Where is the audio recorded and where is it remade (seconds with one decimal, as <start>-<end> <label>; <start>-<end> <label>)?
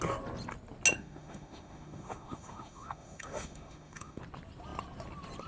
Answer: 0.0-0.9 recorded; 0.9-4.2 remade; 4.2-5.5 recorded